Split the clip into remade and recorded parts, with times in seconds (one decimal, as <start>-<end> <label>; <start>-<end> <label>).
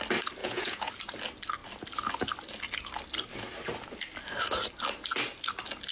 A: 0.0-0.4 recorded; 0.4-0.9 remade; 0.9-5.9 recorded